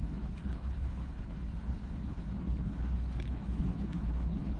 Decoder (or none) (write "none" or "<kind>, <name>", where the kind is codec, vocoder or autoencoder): codec, HILCodec